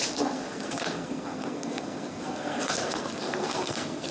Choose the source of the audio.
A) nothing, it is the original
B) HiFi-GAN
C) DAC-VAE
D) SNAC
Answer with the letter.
D